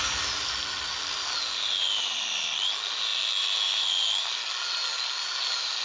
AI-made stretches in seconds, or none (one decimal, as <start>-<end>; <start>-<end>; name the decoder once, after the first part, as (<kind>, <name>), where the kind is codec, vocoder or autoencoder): none